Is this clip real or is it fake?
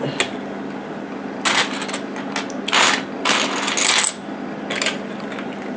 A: real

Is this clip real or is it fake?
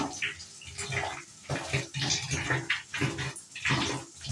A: real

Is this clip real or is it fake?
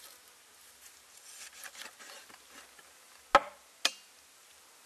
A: real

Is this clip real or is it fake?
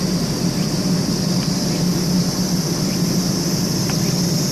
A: real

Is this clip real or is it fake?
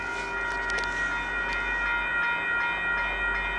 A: real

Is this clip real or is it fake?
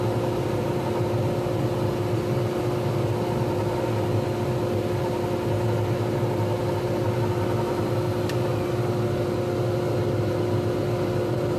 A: real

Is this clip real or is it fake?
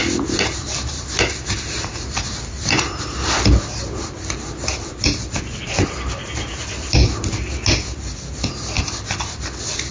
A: real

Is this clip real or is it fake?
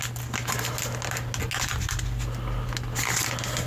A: real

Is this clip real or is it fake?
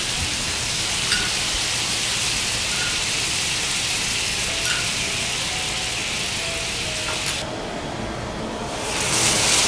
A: real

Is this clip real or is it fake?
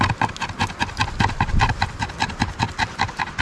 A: real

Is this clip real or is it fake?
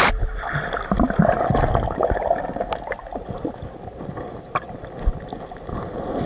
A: real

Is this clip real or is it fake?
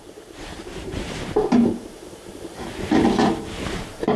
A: fake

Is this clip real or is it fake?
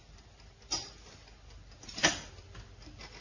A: real